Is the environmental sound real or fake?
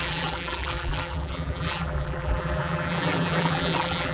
fake